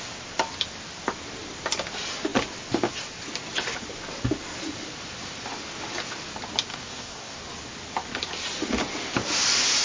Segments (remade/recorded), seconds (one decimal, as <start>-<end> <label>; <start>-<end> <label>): 0.0-6.7 recorded; 6.7-7.4 remade; 7.4-9.8 recorded